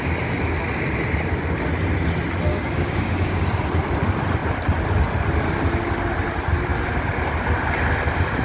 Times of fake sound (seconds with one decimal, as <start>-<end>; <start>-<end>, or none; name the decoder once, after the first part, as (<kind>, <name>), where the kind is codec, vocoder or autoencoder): 2.5-3.4 (codec, DAC)